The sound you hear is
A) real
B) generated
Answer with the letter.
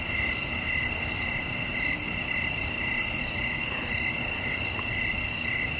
A